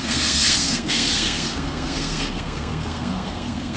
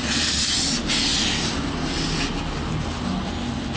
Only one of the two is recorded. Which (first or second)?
second